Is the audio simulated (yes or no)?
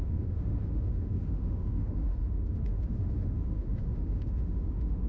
yes